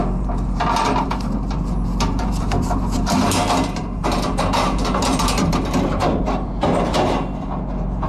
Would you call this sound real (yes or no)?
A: no